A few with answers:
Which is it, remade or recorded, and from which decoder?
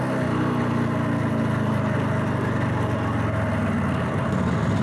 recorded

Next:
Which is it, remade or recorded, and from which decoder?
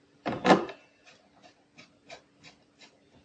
recorded